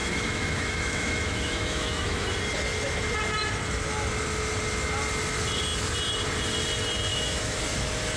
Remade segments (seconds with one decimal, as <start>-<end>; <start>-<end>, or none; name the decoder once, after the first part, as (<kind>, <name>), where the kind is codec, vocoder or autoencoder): 0.0-2.3 (autoencoder, DAC-VAE); 7.1-7.6